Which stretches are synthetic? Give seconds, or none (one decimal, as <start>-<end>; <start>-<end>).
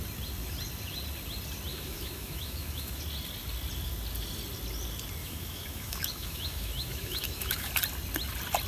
1.7-3.0; 5.2-7.7